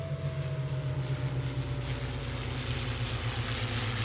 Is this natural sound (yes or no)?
yes